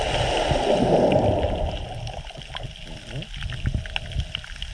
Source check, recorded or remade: recorded